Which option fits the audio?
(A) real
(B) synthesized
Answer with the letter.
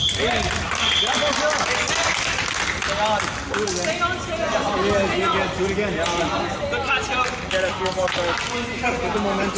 A